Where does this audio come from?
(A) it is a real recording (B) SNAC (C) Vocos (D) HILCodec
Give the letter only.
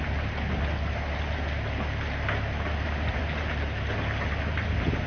A